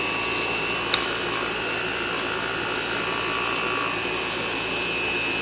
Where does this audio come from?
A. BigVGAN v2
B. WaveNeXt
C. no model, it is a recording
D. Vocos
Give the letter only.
C